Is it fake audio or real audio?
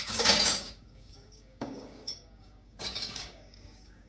fake